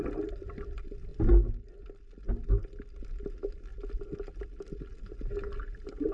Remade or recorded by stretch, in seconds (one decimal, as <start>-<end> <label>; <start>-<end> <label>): 0.0-6.1 recorded